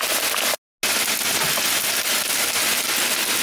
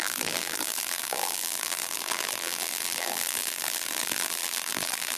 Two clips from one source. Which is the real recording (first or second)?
first